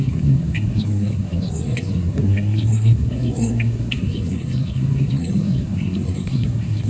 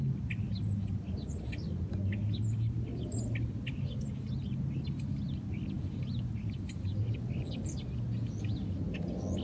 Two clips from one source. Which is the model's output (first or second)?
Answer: first